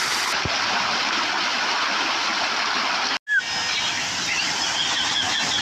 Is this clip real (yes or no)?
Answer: yes